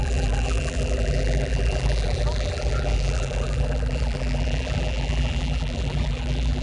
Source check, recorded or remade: remade